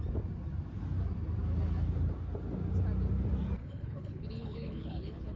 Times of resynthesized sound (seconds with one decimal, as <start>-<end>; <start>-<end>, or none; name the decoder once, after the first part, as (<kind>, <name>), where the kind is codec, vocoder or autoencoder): 3.6-5.4 (codec, HILCodec)